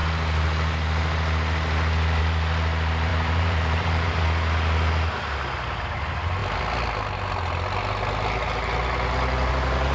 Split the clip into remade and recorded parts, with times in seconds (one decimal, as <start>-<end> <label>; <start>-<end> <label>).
0.0-3.1 recorded; 3.1-4.2 remade; 4.2-9.9 recorded